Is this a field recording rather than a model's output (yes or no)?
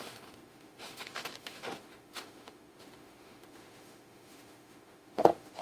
no